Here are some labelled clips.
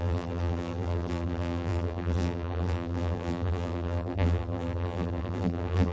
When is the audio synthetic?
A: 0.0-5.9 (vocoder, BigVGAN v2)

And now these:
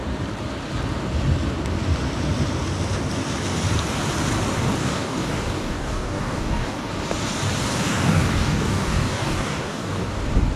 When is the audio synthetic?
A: 4.8-6.9 (codec, DAC); 7.7-10.1

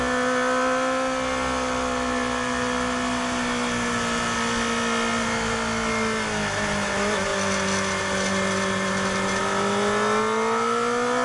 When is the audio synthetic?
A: none

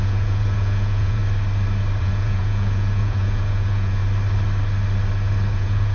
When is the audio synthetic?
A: 0.0-1.2 (vocoder, Vocos); 2.0-4.0; 5.5-5.9

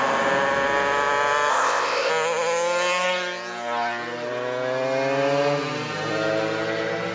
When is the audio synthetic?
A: 1.5-2.1 (codec, ZipCodec)

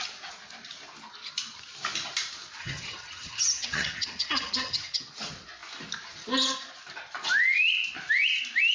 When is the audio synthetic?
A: 2.6-5.0 (vocoder, HiFi-GAN)

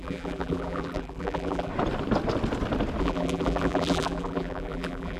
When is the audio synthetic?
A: 0.0-1.7 (vocoder, BigVGAN v2); 3.0-5.2